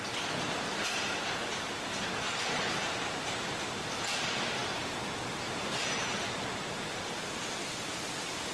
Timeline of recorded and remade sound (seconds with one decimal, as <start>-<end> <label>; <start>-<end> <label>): 0.0-4.6 remade; 4.6-5.6 recorded; 5.6-8.5 remade